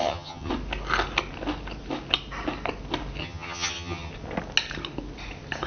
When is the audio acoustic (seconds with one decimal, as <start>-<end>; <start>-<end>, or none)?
0.5-3.2; 4.1-5.7